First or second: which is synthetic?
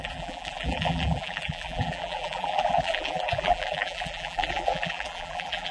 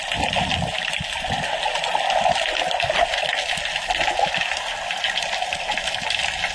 first